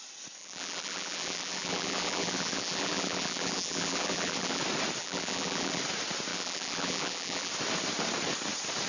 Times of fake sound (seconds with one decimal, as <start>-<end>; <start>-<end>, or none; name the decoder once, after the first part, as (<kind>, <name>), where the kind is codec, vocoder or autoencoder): 0.4-4.6 (vocoder, BigVGAN v2); 5.0-5.8; 6.3-7.5